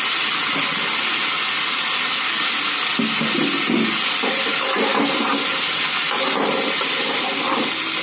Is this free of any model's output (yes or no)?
yes